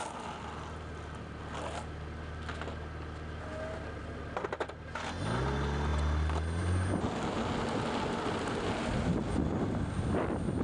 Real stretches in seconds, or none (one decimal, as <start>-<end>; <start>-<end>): 0.0-10.6